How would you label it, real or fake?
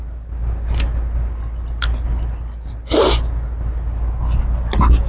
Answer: real